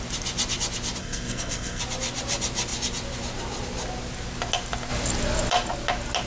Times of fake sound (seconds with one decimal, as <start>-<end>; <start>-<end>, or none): 1.0-1.8